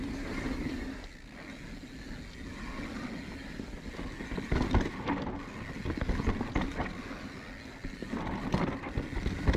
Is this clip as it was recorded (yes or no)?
yes